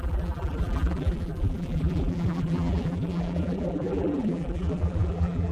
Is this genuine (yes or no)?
no